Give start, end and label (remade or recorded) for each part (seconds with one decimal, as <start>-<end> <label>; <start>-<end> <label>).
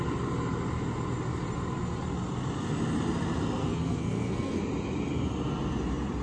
0.0-3.6 recorded; 3.6-4.6 remade; 4.6-6.2 recorded